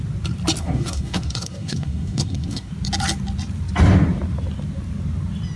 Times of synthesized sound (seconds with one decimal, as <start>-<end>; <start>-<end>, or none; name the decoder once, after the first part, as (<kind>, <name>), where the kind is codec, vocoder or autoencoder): 0.6-2.7 (codec, SNAC)